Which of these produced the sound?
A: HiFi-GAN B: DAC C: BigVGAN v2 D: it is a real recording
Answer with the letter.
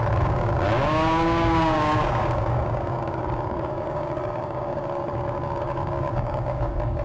B